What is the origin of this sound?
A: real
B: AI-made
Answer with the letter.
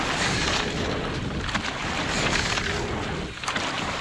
A